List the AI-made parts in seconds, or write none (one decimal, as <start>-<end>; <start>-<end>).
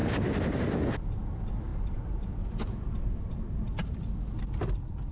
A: 1.7-5.1